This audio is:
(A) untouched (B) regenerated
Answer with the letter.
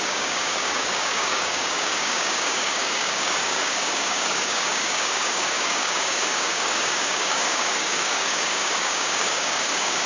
B